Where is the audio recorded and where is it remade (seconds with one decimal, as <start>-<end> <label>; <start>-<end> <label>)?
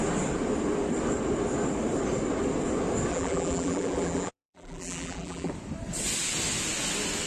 0.0-3.1 recorded; 3.1-5.5 remade; 5.5-7.3 recorded